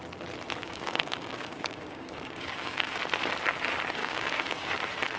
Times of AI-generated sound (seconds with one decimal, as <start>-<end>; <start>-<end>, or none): 0.6-3.0; 4.0-4.7